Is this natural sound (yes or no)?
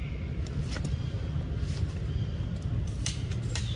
yes